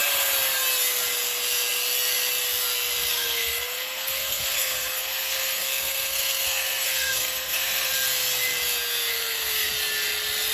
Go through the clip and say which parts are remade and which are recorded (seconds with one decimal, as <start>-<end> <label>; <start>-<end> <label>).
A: 0.0-3.1 recorded; 3.1-7.9 remade; 7.9-9.1 recorded; 9.1-9.7 remade; 9.7-10.5 recorded